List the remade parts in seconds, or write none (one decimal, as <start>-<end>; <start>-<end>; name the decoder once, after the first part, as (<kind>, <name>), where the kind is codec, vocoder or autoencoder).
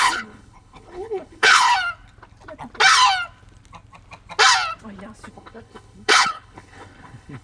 0.0-1.7 (codec, HILCodec); 5.3-7.4